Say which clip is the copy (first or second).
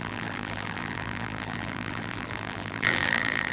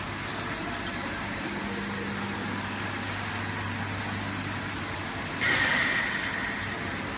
first